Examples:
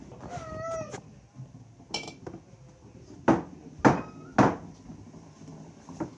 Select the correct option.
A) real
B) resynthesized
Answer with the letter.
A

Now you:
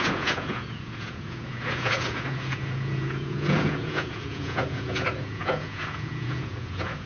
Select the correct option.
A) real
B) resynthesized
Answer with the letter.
B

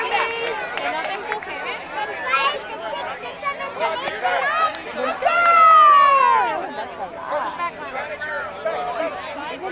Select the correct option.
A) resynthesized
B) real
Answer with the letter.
B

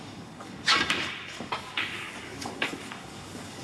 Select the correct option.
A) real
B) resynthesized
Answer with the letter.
B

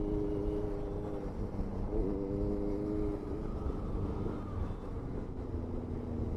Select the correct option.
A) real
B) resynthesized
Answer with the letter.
A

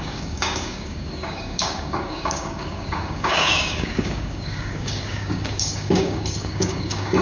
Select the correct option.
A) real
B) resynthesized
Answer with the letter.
B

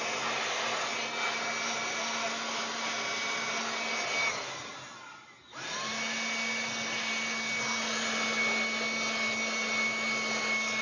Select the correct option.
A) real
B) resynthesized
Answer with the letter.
A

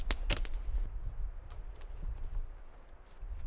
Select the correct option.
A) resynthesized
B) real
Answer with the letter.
B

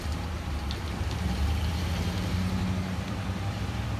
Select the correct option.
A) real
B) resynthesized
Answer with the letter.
B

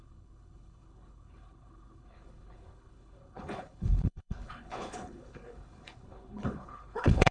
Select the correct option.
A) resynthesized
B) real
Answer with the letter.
A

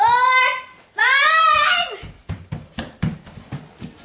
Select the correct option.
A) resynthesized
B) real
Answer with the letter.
B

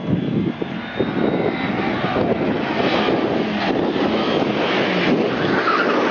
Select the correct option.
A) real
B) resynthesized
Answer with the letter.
A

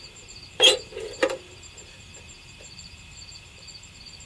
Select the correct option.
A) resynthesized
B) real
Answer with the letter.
A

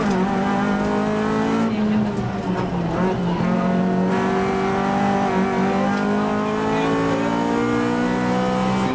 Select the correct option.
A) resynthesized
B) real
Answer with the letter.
B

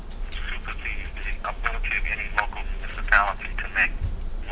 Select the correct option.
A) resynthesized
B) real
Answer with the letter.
B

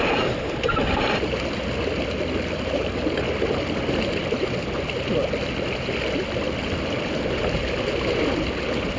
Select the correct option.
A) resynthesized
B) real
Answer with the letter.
B